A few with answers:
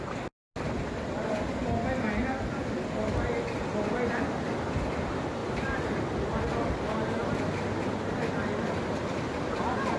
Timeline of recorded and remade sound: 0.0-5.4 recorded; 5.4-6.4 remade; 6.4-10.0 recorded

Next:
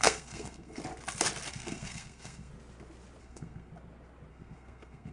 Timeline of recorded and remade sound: 0.0-0.8 remade; 0.8-1.5 recorded; 1.5-2.5 remade; 2.5-3.2 recorded; 3.2-3.7 remade; 3.7-4.3 recorded; 4.3-5.1 remade